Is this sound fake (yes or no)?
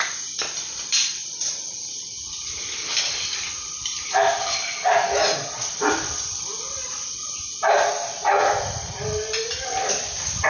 yes